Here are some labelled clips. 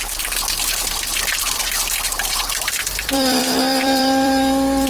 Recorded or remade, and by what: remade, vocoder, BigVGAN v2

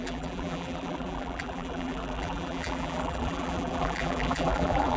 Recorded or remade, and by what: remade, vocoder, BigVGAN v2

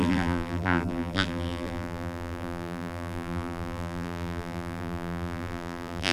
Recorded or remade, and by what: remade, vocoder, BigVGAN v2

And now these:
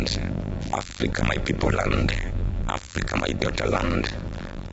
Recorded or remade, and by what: remade, vocoder, BigVGAN v2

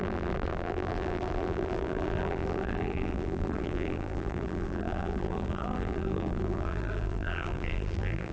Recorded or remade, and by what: remade, vocoder, BigVGAN v2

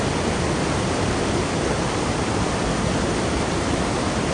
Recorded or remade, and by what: remade, vocoder, BigVGAN v2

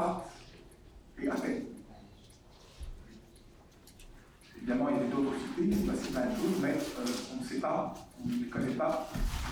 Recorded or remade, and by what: recorded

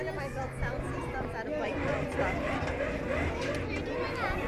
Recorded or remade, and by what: recorded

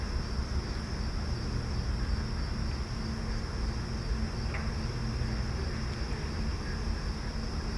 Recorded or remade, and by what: recorded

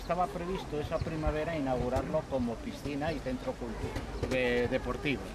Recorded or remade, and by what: recorded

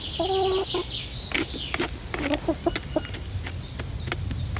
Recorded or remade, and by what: recorded